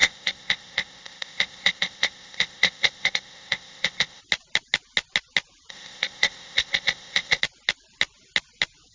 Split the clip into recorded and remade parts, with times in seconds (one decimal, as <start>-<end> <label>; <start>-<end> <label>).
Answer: 0.0-4.2 remade; 4.2-5.7 recorded; 5.7-7.4 remade; 7.4-8.9 recorded